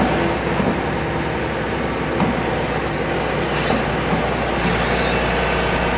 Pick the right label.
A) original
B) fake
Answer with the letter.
A